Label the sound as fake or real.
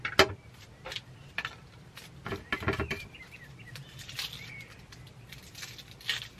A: real